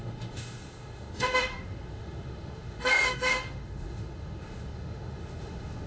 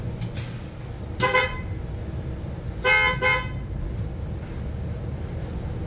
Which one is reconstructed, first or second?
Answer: first